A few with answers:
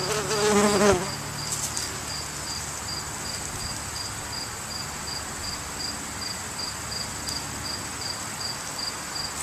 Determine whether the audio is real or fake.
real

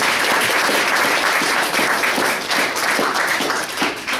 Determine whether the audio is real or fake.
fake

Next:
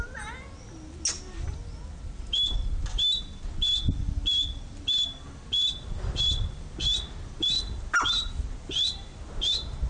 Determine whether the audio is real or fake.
real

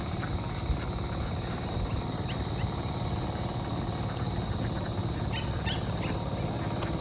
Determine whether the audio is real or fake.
real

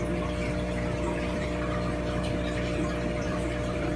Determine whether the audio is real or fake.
fake